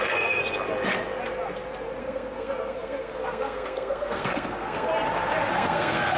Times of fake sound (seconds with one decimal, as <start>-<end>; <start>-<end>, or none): 0.0-0.4; 2.0-4.9; 5.5-6.2